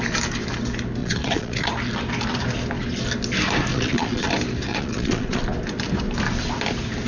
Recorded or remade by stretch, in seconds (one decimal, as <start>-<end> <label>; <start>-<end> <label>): 0.0-1.0 recorded; 1.0-1.7 remade; 1.7-3.7 recorded; 3.7-4.3 remade; 4.3-4.7 recorded; 4.7-5.4 remade; 5.4-7.1 recorded